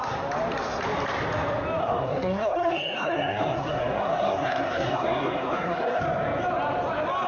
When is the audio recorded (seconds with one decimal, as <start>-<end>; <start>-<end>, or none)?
0.0-1.8; 6.0-7.3